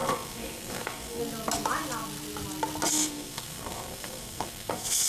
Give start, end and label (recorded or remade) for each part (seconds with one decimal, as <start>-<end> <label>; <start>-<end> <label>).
0.0-1.2 remade; 1.2-2.9 recorded; 2.9-5.1 remade